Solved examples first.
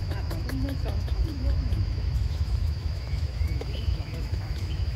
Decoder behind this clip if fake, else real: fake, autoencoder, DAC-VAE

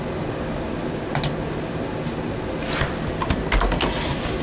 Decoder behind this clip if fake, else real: real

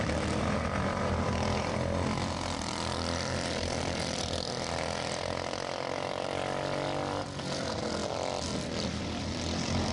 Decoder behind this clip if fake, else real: real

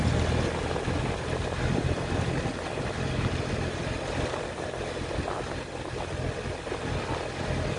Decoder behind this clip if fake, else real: real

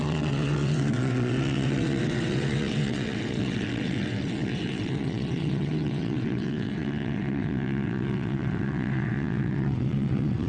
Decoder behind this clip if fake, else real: fake, vocoder, WaveNeXt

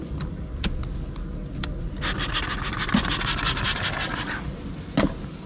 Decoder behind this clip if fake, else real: real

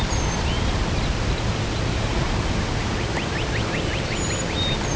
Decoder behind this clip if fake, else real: real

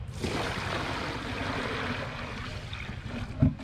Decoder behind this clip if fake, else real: real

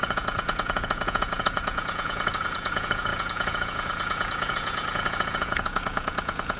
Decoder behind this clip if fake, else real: fake, vocoder, Vocos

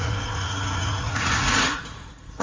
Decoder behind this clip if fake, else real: fake, vocoder, Vocos